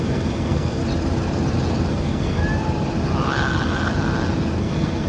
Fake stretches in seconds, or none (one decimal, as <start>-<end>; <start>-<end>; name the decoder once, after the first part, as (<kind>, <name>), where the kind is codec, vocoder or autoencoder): 0.0-0.8 (codec, SNAC); 1.9-2.4; 4.6-5.1